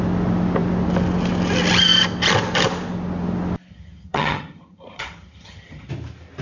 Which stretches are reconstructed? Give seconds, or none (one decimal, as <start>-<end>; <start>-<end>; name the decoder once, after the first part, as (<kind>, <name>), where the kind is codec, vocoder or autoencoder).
3.7-5.9 (vocoder, HiFi-GAN)